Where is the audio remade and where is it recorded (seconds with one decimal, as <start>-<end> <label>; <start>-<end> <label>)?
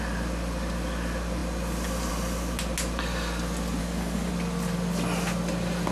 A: 0.0-3.8 recorded; 3.8-4.3 remade; 4.3-5.9 recorded